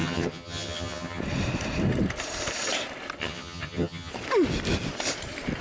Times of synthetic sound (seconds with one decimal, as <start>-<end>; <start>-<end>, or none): 0.0-1.2; 3.2-4.1

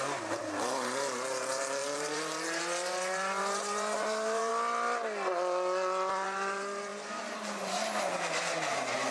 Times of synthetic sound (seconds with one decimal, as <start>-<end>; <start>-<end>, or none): 0.0-4.5; 6.1-9.1